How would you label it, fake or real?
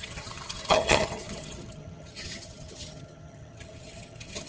fake